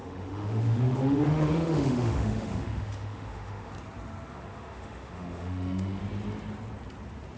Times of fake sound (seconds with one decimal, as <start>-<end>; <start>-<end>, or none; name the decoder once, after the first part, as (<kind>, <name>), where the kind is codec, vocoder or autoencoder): 0.0-3.7 (autoencoder, DAC-VAE); 4.3-6.0